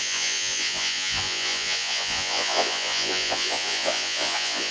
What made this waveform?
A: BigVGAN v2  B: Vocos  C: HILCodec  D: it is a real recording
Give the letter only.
B